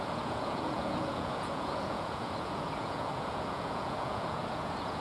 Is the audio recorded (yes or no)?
no